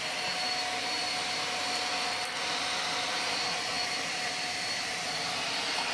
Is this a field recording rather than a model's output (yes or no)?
no